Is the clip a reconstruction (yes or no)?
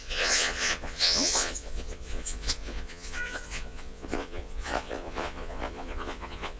yes